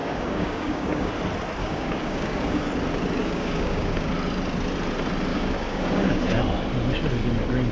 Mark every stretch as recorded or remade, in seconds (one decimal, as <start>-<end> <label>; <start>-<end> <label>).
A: 0.0-1.1 remade; 1.1-1.6 recorded; 1.6-2.7 remade; 2.7-3.2 recorded; 3.2-4.1 remade; 4.1-5.3 recorded; 5.3-6.4 remade; 6.4-7.7 recorded